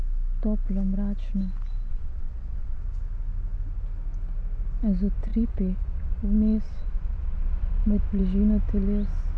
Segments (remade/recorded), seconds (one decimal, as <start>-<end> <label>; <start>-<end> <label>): 0.0-1.9 recorded; 1.9-2.8 remade; 2.8-5.3 recorded; 5.3-8.2 remade; 8.2-9.4 recorded